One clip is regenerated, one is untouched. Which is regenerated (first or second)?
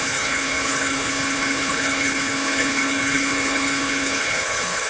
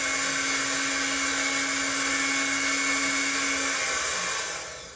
first